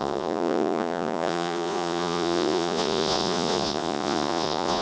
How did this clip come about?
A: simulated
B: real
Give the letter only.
A